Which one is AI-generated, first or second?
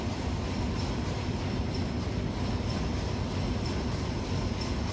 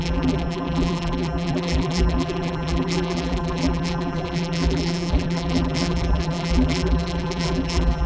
second